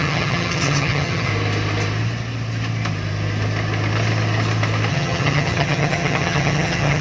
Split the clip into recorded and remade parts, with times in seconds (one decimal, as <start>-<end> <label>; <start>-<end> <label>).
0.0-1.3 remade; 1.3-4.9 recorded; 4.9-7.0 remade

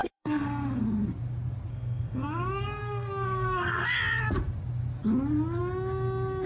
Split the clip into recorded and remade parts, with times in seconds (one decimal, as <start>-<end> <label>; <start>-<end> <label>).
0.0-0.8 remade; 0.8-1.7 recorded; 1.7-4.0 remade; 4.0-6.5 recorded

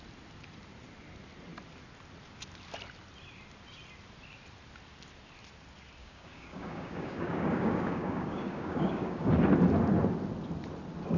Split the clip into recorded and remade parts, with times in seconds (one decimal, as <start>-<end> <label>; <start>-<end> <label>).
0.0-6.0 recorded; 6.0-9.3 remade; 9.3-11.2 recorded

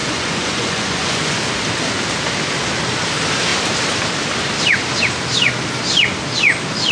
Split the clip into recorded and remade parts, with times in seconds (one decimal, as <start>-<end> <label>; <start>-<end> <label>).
0.0-1.4 remade; 1.4-6.9 recorded

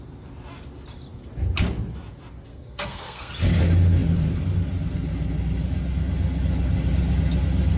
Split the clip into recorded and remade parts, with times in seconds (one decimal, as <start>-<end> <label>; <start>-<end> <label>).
0.0-2.5 recorded; 2.5-3.3 remade; 3.3-7.8 recorded